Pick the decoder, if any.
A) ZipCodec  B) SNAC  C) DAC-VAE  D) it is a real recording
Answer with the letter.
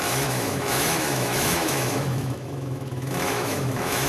C